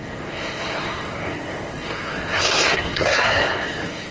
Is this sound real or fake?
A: fake